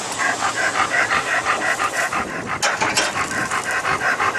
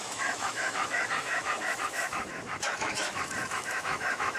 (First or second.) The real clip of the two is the first